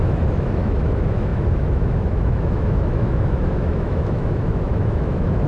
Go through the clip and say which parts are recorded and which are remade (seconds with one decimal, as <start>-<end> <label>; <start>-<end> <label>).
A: 0.0-5.5 remade